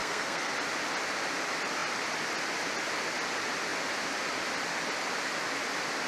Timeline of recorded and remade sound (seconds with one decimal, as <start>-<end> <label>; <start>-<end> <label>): 0.0-0.5 remade; 0.5-6.1 recorded